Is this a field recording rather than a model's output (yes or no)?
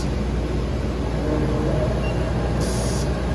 yes